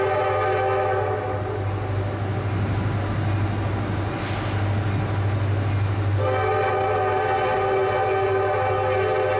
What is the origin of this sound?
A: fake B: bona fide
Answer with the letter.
B